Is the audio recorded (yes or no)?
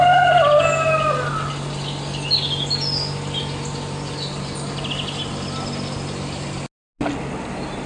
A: yes